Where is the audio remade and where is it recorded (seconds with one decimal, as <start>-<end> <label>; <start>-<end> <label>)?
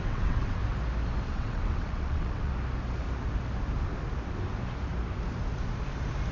0.0-0.6 remade; 0.6-1.2 recorded; 1.2-2.5 remade; 2.5-6.3 recorded